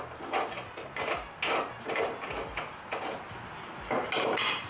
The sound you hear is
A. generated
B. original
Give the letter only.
B